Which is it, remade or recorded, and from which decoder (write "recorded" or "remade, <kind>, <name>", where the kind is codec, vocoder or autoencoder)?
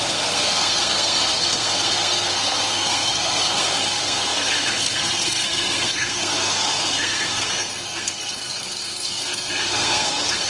remade, codec, SNAC